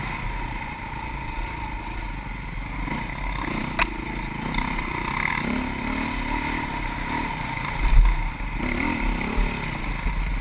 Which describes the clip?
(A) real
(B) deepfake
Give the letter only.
A